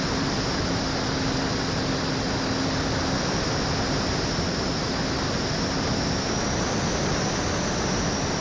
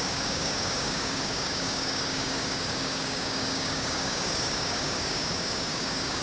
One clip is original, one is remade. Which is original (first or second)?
first